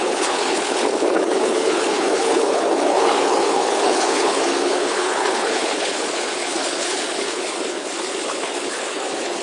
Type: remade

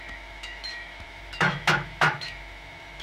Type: remade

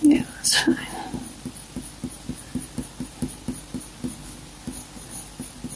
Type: recorded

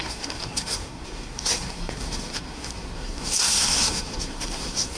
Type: remade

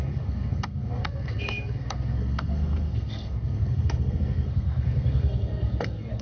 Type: remade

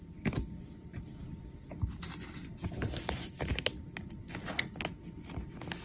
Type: recorded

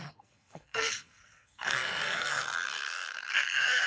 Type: remade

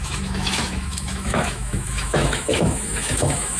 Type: remade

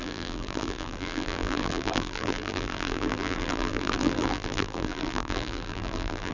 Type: remade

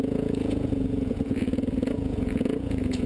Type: remade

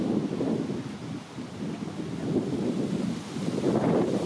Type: recorded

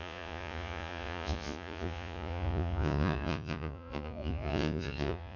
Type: remade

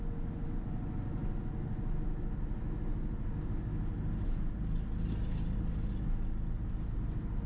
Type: recorded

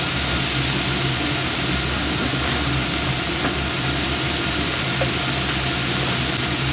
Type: recorded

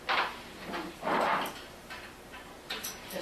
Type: remade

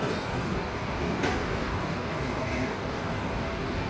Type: remade